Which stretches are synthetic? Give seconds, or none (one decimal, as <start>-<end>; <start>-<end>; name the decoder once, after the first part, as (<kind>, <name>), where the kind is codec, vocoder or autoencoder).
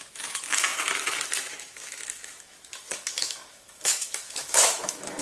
0.0-5.2 (autoencoder, DAC-VAE)